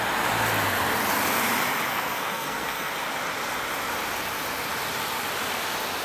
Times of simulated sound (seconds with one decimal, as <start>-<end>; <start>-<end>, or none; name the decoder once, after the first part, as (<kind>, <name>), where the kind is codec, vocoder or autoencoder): 1.9-2.9 (codec, SNAC)